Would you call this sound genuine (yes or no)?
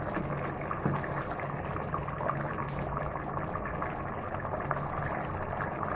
yes